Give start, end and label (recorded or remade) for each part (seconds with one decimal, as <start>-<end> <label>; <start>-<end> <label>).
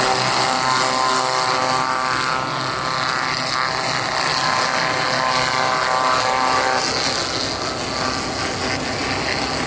0.0-9.7 recorded